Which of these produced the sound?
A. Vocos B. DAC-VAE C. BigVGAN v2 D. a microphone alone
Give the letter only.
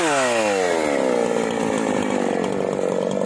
D